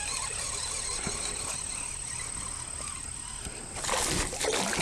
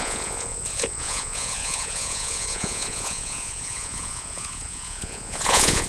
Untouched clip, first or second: first